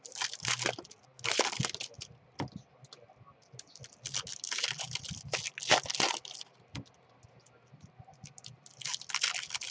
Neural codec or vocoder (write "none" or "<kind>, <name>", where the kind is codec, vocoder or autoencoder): none